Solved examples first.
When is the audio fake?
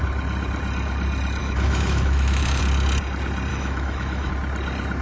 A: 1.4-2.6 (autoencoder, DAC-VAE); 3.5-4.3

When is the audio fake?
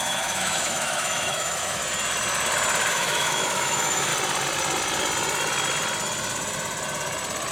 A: 0.0-1.8 (autoencoder, DAC-VAE); 2.9-4.1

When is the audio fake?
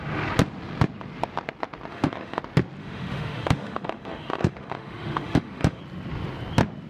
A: 1.9-2.4 (autoencoder, DAC-VAE); 2.8-5.8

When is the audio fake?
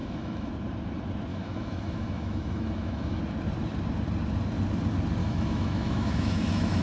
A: 0.0-0.5 (autoencoder, DAC-VAE); 1.3-3.2; 5.2-6.8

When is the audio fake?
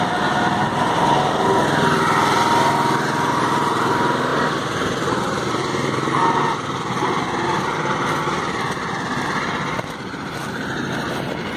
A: none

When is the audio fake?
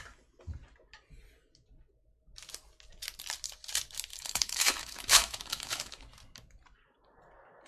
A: 4.1-6.0 (autoencoder, DAC-VAE)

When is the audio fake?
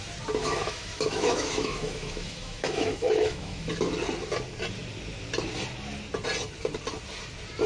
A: 0.4-3.7 (autoencoder, DAC-VAE)